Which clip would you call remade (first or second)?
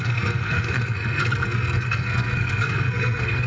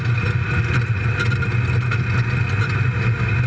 first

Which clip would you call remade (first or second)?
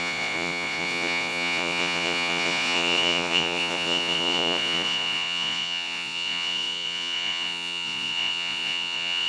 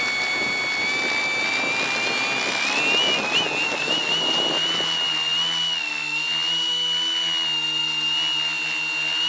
first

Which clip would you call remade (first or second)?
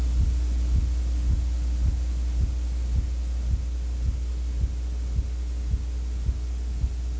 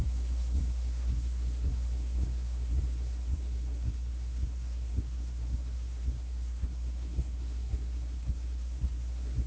second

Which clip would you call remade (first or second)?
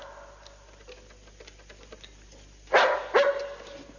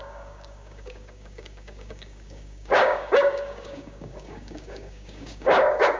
second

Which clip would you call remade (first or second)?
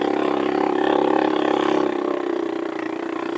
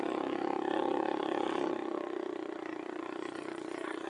second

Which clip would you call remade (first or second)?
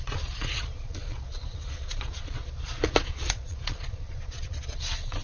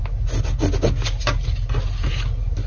first